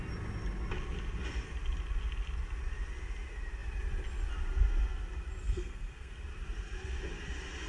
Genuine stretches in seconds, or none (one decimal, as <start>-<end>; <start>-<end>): 0.0-5.4; 6.1-7.7